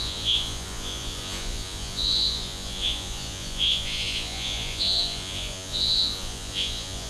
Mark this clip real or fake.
fake